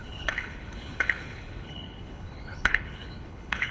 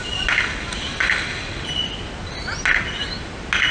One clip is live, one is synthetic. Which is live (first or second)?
second